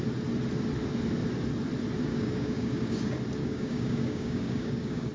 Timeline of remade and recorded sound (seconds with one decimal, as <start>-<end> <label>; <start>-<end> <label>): 0.0-2.1 recorded; 2.1-3.0 remade; 3.0-3.4 recorded; 3.4-5.1 remade